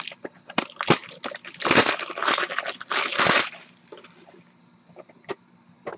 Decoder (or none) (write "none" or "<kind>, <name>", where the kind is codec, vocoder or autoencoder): vocoder, BigVGAN v2